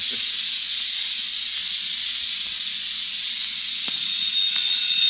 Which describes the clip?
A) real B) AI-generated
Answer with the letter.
A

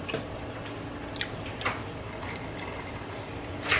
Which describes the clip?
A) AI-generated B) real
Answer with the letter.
B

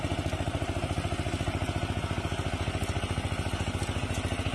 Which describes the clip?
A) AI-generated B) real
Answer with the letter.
B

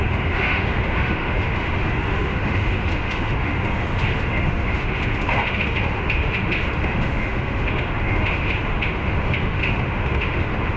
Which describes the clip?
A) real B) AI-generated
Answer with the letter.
B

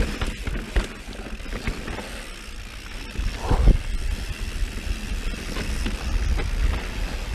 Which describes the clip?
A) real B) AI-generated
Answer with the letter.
A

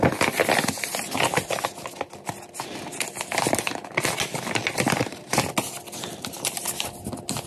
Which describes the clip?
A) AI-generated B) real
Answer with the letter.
B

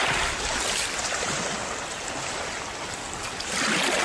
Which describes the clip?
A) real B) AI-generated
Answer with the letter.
A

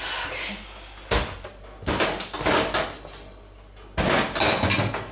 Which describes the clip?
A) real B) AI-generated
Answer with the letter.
A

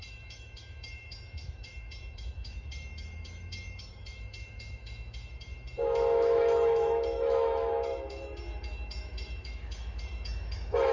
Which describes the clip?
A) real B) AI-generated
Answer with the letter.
B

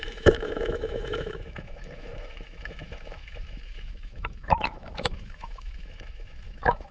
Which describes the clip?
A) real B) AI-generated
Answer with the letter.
B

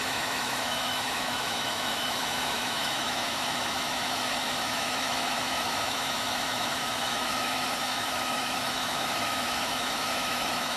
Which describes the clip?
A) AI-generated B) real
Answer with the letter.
A